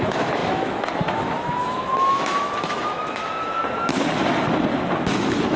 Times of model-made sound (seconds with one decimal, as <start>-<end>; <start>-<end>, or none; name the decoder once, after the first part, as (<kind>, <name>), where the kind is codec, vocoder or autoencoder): 0.0-3.6 (autoencoder, DAC-VAE); 5.1-5.6